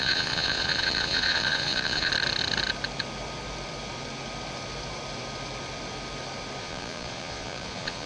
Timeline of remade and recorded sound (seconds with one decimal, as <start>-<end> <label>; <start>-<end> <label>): 0.0-2.1 remade; 2.1-6.6 recorded; 6.6-8.1 remade